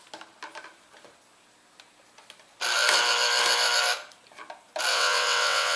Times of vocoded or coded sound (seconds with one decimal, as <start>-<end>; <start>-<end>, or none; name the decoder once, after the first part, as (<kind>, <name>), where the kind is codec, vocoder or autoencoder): 4.9-5.8 (vocoder, WaveNeXt)